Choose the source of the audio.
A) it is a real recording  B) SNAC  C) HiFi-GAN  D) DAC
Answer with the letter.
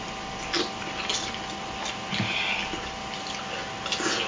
A